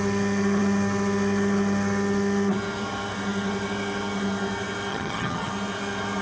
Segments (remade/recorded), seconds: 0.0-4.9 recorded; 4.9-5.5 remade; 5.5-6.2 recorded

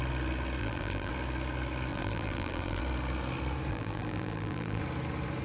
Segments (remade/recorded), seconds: 0.0-0.6 recorded; 0.6-1.1 remade; 1.1-1.9 recorded; 1.9-2.8 remade; 2.8-3.7 recorded; 3.7-4.8 remade; 4.8-5.4 recorded

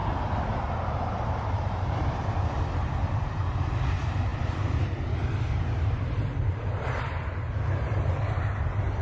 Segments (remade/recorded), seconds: 0.0-1.0 recorded; 1.0-9.0 remade

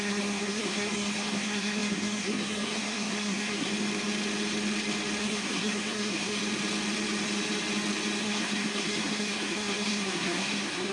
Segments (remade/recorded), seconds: 0.0-3.7 remade; 3.7-5.2 recorded; 5.2-6.4 remade; 6.4-8.2 recorded; 8.2-10.9 remade

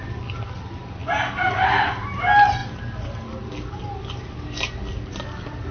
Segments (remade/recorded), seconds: 0.0-5.7 recorded

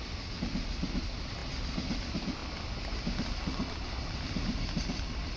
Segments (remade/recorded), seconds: 0.0-5.4 recorded